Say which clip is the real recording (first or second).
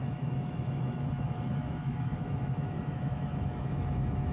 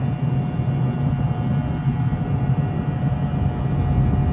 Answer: second